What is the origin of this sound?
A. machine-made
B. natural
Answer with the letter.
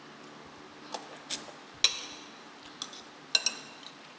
B